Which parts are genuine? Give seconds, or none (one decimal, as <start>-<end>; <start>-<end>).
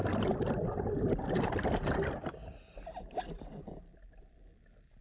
0.0-2.4; 4.4-5.0